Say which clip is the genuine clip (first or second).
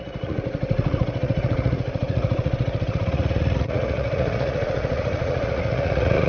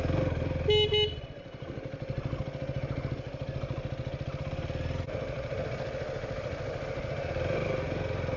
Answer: second